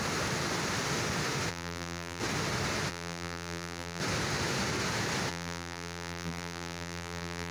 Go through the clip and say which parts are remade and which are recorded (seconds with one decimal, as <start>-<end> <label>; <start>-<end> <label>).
0.0-1.5 recorded; 1.5-2.2 remade; 2.2-2.9 recorded; 2.9-4.0 remade; 4.0-5.3 recorded; 5.3-7.5 remade